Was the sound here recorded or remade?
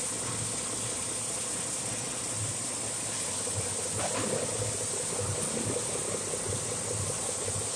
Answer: recorded